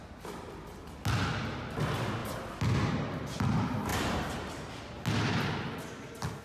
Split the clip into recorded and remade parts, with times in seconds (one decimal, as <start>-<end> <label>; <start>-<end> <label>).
0.0-6.4 recorded